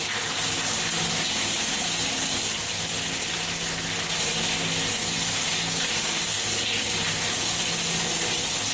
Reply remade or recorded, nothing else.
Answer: recorded